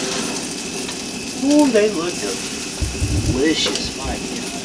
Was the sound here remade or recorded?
recorded